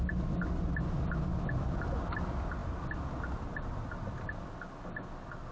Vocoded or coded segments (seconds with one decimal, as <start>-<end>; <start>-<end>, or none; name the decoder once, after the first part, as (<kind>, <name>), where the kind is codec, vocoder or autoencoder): none